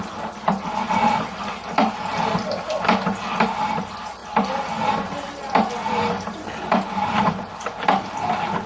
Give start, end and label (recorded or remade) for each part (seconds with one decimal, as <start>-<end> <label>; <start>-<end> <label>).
0.0-8.7 recorded